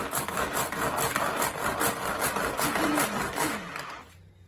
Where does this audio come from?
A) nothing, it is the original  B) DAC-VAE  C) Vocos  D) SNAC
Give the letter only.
A